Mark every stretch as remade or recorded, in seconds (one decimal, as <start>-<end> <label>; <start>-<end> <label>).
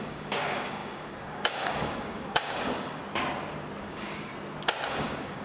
0.0-3.0 remade; 3.0-3.8 recorded; 3.8-4.3 remade; 4.3-4.9 recorded; 4.9-5.4 remade